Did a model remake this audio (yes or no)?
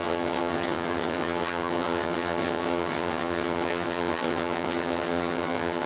yes